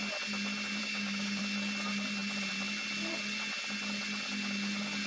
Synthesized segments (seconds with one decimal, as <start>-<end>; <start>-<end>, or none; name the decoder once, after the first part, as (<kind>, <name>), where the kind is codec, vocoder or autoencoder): 0.8-1.4 (codec, DAC)